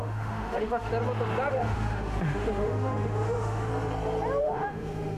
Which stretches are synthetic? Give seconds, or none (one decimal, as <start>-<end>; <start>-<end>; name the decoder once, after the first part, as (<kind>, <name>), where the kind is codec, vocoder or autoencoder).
0.0-0.9 (autoencoder, DAC-VAE); 1.5-3.7; 4.4-5.2